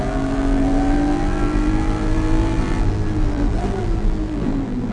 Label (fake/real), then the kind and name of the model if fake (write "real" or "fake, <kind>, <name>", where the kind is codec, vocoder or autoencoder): fake, vocoder, BigVGAN v2